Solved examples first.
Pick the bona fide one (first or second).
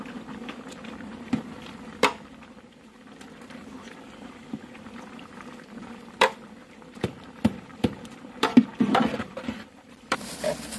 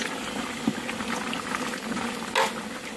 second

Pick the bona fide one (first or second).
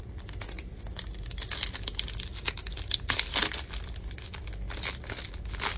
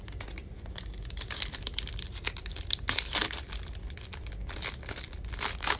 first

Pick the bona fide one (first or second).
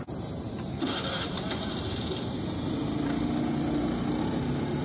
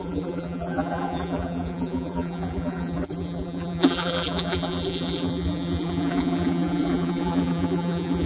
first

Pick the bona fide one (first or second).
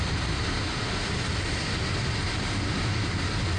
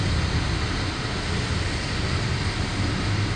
second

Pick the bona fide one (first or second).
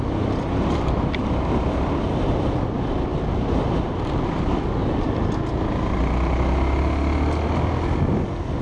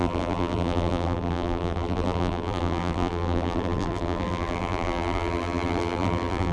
first